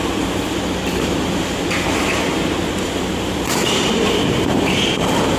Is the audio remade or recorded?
remade